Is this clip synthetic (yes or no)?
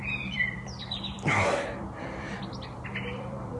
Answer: yes